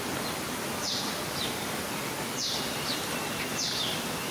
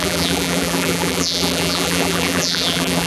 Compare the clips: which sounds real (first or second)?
first